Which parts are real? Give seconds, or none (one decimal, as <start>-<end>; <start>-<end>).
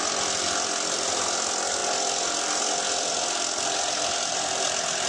0.0-5.1